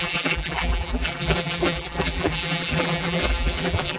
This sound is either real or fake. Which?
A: fake